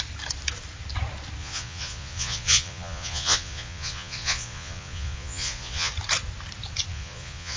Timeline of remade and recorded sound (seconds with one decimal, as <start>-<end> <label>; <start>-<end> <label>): 0.0-1.4 recorded; 1.4-5.9 remade; 5.9-6.9 recorded; 6.9-7.6 remade